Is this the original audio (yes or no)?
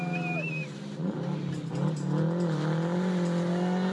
yes